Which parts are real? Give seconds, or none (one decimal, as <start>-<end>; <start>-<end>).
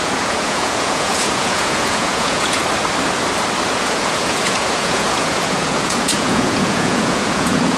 2.6-3.7